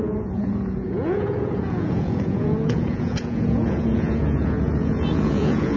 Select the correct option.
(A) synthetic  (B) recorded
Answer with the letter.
A